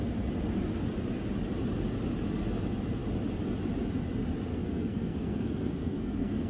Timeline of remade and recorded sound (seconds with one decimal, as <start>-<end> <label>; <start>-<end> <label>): 0.0-4.5 recorded; 4.5-6.5 remade